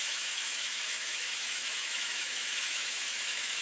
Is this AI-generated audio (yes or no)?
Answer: yes